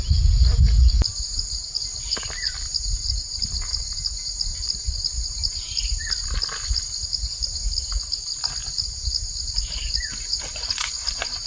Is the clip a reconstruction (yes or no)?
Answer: no